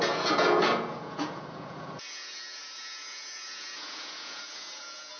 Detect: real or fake fake